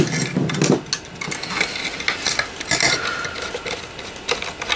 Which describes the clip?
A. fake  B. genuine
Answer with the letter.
B